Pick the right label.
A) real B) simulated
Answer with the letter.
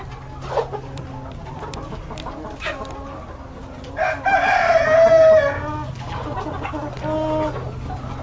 A